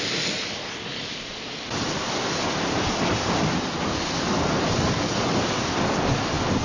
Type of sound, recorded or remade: recorded